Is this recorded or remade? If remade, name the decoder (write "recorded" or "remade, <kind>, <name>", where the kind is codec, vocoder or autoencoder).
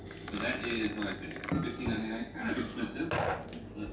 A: recorded